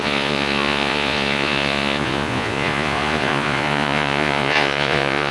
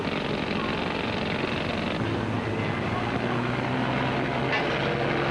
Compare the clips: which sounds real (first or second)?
second